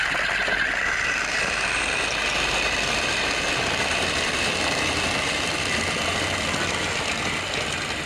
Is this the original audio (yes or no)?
yes